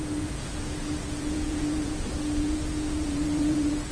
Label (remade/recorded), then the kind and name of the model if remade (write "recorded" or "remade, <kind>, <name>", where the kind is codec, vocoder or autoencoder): remade, vocoder, Vocos